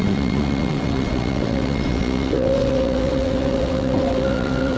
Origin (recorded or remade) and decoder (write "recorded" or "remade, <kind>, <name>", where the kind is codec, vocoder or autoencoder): remade, vocoder, WaveNeXt